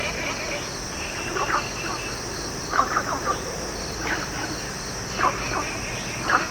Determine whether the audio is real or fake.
real